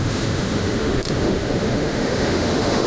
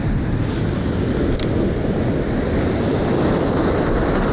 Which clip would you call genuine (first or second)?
second